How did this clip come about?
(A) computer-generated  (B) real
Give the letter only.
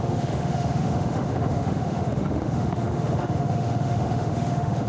A